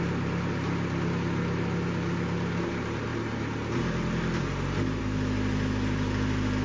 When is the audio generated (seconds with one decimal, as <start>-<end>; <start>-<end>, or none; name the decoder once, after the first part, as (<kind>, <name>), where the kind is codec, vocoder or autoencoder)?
none